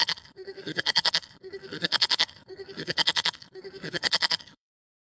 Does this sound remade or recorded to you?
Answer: remade